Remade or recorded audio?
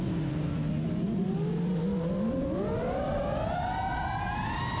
recorded